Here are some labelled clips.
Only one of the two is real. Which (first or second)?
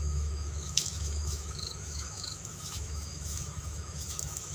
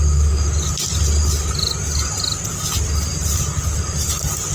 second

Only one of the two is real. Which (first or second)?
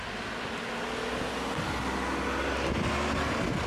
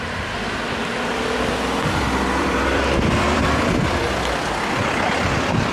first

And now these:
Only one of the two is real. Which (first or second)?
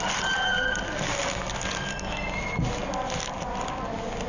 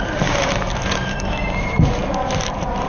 first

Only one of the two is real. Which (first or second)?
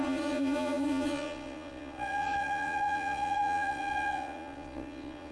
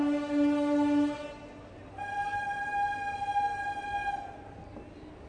second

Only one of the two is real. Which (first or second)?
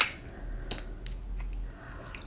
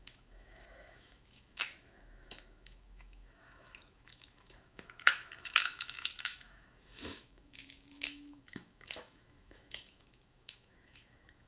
first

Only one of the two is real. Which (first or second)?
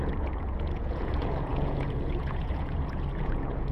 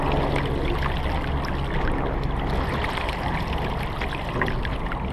second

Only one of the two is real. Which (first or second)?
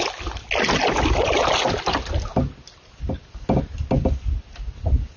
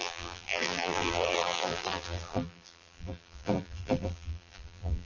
first